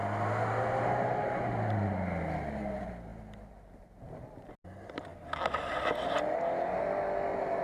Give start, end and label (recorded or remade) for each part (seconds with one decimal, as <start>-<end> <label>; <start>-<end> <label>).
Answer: 0.0-7.6 recorded

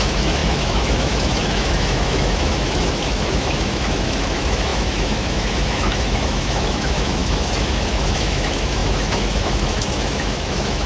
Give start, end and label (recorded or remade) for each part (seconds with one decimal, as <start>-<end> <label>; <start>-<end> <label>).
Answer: 0.0-10.9 remade

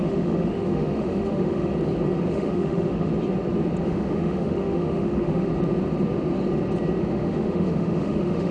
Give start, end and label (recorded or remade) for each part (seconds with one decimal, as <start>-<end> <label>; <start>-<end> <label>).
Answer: 0.0-1.7 remade; 1.7-2.3 recorded; 2.3-3.1 remade; 3.1-3.8 recorded; 3.8-5.5 remade; 5.5-7.0 recorded; 7.0-8.5 remade

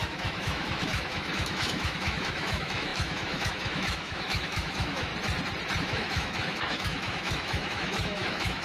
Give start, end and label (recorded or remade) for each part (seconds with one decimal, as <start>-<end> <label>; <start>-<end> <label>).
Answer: 0.0-5.1 remade; 5.1-5.8 recorded; 5.8-8.6 remade

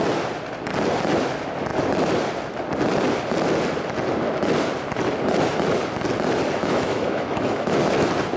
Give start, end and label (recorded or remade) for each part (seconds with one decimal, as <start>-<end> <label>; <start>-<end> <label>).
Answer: 0.0-6.6 recorded; 6.6-7.9 remade; 7.9-8.4 recorded